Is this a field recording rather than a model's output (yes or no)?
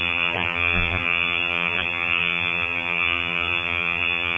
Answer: no